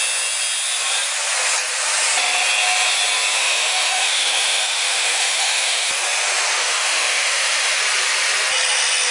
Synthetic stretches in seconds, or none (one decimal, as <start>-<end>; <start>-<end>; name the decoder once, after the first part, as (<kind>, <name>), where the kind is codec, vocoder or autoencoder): 3.4-5.9 (autoencoder, DAC-VAE); 6.6-7.8